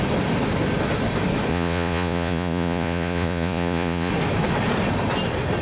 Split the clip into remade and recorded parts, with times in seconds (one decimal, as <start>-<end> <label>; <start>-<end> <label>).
0.0-1.5 recorded; 1.5-4.1 remade; 4.1-5.6 recorded